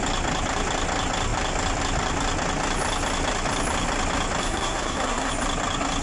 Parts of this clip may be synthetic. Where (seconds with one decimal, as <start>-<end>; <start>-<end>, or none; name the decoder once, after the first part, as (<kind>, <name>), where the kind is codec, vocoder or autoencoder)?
4.4-5.3 (codec, SNAC)